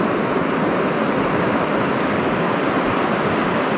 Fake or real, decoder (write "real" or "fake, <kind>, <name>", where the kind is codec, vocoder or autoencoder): real